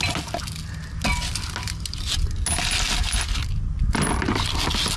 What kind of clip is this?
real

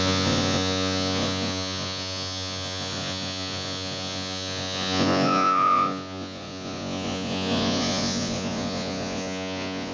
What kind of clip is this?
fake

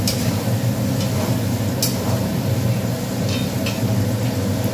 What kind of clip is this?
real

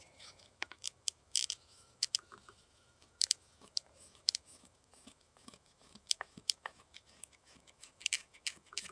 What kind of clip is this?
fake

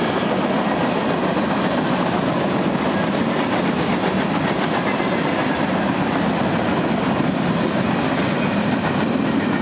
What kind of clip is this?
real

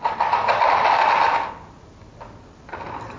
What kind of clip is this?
real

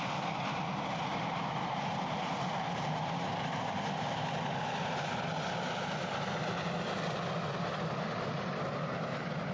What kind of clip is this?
real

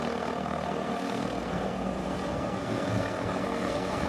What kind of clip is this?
fake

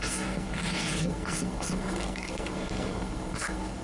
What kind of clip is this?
fake